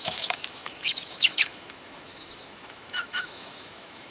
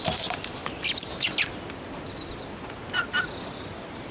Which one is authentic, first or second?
second